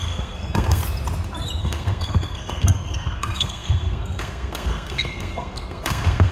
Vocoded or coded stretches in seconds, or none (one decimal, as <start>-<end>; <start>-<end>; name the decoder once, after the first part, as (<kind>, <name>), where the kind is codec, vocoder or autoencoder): 0.0-0.8 (codec, SNAC); 1.6-6.3